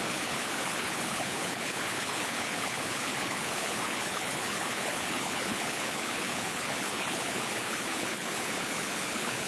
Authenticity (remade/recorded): remade